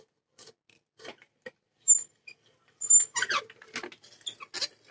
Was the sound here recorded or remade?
recorded